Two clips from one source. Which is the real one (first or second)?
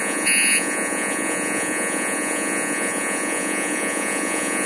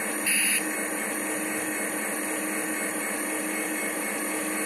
second